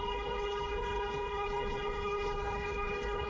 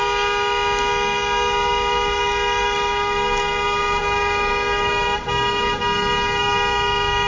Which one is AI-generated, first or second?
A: first